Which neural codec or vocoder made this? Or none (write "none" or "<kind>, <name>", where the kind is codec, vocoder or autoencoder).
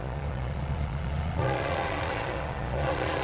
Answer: vocoder, Vocos